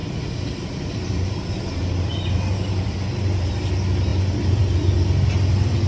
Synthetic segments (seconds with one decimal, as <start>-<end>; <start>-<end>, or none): 0.0-3.5

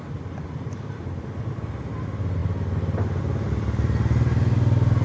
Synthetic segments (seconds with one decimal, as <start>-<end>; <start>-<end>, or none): none

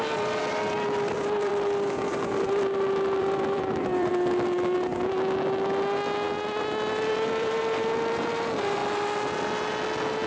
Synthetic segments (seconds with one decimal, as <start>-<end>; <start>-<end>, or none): 0.0-1.5; 3.2-4.1; 7.1-8.8

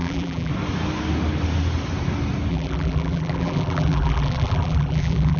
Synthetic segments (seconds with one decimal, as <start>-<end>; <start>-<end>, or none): 0.0-0.5; 2.5-5.4